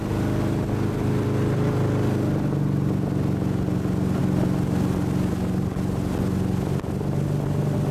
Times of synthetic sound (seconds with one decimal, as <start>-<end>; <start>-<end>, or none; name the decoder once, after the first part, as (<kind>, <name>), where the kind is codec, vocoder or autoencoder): none